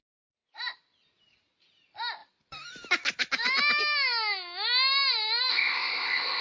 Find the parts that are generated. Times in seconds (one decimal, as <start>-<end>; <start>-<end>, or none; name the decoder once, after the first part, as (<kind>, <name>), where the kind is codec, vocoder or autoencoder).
5.5-6.4 (codec, ZipCodec)